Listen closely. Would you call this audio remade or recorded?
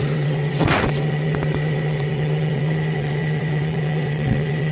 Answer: remade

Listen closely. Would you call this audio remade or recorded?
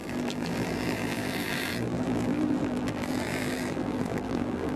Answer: remade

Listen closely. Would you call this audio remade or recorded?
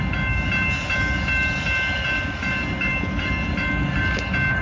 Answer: recorded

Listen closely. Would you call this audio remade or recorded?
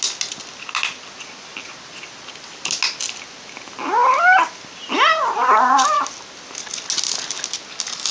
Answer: recorded